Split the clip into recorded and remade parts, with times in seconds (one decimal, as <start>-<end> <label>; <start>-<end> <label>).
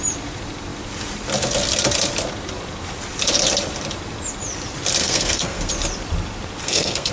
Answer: 0.0-5.0 recorded; 5.0-5.7 remade; 5.7-6.6 recorded; 6.6-7.1 remade